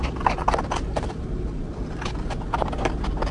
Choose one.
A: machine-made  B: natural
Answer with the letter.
B